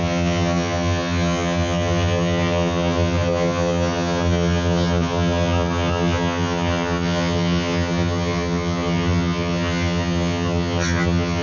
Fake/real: fake